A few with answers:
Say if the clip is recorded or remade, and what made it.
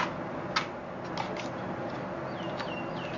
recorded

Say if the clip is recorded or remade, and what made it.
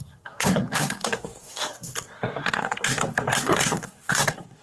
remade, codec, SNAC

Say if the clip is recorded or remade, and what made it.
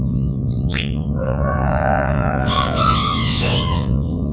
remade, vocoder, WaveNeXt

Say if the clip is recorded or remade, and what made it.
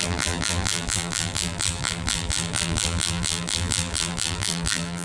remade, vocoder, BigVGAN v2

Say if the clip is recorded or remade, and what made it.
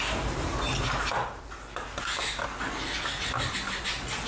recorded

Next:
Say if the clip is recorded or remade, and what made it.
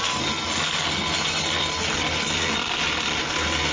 recorded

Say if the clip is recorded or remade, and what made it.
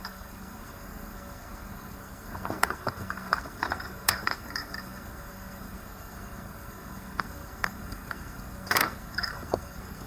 remade, codec, SNAC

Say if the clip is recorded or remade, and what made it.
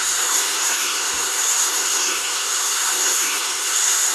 remade, codec, SNAC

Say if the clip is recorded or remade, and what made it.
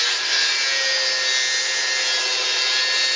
recorded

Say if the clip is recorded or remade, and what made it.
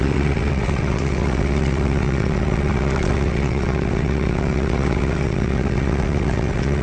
remade, vocoder, WaveNeXt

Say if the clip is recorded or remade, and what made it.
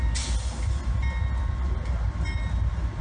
recorded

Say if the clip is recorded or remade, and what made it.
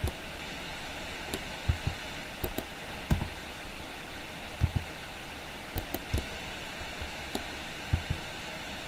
recorded